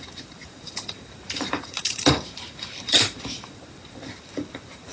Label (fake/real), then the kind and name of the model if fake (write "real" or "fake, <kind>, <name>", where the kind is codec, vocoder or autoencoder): fake, vocoder, BigVGAN v2